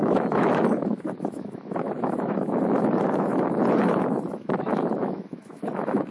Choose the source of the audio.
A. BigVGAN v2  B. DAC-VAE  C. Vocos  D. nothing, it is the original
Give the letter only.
B